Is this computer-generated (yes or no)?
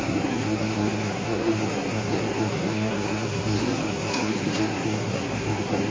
yes